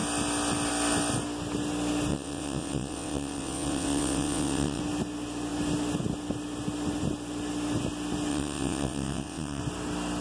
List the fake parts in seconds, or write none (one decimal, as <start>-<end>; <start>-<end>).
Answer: 2.1-4.8; 8.3-9.6